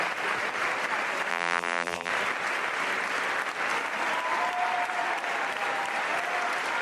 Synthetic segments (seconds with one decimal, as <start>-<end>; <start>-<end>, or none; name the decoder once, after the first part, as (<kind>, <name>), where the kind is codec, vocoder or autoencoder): 1.3-2.1 (vocoder, BigVGAN v2)